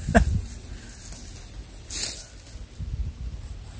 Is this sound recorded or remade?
recorded